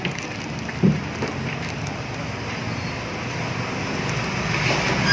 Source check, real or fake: real